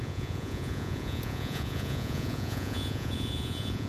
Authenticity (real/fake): fake